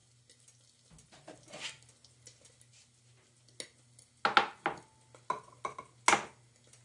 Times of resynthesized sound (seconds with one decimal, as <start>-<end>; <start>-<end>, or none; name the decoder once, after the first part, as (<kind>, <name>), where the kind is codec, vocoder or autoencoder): none